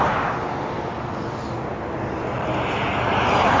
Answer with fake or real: real